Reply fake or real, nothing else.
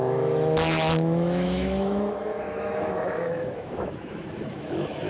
fake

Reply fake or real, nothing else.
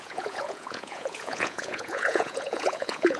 fake